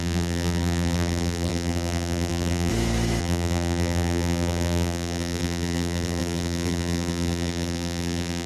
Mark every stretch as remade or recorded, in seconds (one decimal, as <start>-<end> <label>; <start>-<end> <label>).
0.0-2.7 remade; 2.7-3.2 recorded; 3.2-8.5 remade